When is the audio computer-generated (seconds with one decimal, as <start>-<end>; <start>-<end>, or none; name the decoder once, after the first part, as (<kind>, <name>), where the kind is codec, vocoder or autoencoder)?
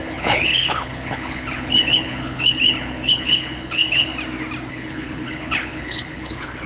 0.0-4.1 (codec, HILCodec); 4.7-6.7